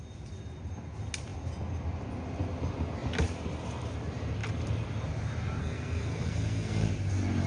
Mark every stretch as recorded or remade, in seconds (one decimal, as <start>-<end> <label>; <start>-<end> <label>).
0.0-5.6 recorded; 5.6-6.9 remade; 6.9-7.5 recorded